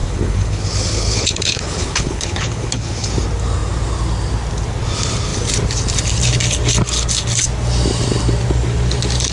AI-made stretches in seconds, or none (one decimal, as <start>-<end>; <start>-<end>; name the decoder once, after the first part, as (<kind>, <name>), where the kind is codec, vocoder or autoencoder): 0.0-3.1 (codec, HILCodec)